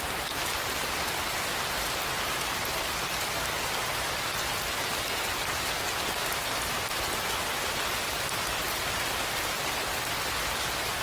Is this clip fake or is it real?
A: real